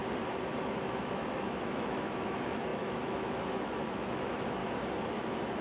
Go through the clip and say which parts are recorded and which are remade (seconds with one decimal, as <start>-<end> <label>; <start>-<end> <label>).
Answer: 0.0-0.6 recorded; 0.6-4.6 remade; 4.6-5.1 recorded; 5.1-5.6 remade